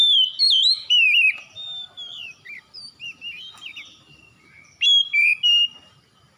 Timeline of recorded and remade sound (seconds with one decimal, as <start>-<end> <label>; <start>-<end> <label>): 0.0-0.6 recorded; 0.6-4.4 remade; 4.4-6.4 recorded